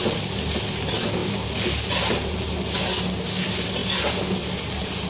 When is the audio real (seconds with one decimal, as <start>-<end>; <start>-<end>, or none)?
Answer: 0.0-5.1